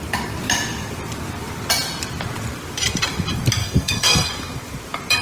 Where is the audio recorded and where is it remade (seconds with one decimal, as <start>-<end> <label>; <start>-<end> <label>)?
0.0-3.6 recorded; 3.6-4.3 remade; 4.3-5.2 recorded